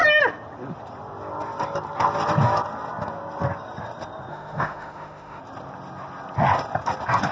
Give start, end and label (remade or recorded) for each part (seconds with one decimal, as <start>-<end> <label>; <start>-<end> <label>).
0.0-4.3 recorded; 4.3-5.4 remade; 5.4-7.3 recorded